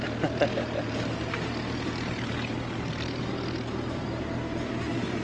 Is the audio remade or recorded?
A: recorded